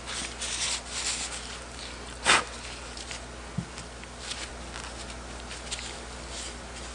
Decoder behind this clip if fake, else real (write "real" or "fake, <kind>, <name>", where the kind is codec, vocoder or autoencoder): real